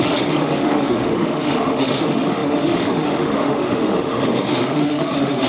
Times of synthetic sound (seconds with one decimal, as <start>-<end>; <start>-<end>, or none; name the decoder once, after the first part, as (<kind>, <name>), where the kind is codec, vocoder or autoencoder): 0.0-5.5 (autoencoder, DAC-VAE)